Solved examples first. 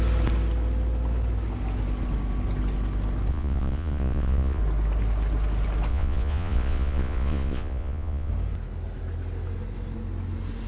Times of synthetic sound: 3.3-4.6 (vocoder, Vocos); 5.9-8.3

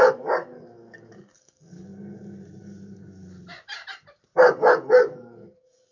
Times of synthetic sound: 0.0-1.9 (codec, DAC); 4.9-5.9

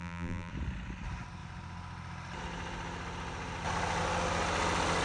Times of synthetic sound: 0.0-0.5 (vocoder, BigVGAN v2)